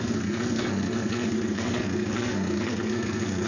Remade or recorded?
remade